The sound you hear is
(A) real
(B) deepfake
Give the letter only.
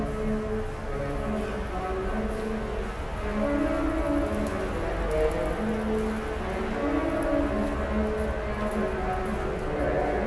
A